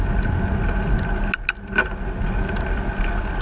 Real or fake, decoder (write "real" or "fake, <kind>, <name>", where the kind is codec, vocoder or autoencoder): real